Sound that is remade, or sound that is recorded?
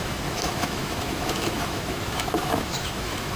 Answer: remade